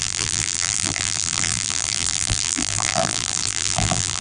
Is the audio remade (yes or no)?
yes